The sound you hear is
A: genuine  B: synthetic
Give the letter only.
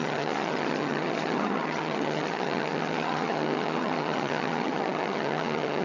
B